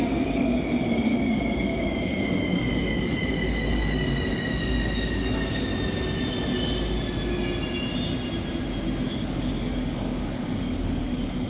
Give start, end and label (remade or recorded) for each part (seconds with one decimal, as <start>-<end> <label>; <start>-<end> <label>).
0.0-5.7 remade; 5.7-9.1 recorded; 9.1-11.5 remade